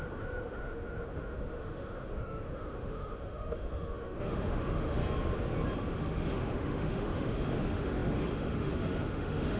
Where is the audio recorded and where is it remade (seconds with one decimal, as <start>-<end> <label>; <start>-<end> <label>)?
0.0-5.0 remade; 5.0-5.9 recorded; 5.9-9.6 remade